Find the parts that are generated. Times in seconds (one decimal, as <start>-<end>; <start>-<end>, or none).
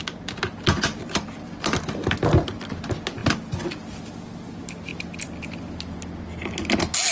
1.0-2.0